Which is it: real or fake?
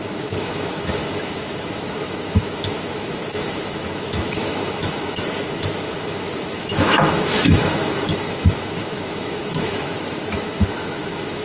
fake